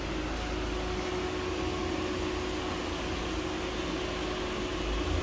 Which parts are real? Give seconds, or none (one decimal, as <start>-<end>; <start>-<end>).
0.0-5.2